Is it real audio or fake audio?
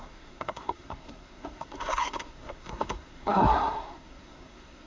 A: fake